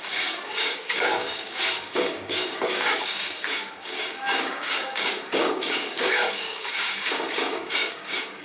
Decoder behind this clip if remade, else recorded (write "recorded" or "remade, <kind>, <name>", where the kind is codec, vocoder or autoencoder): remade, codec, DAC